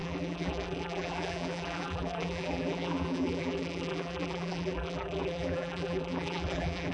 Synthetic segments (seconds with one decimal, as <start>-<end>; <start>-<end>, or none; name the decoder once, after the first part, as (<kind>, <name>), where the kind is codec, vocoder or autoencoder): 0.0-6.9 (vocoder, BigVGAN v2)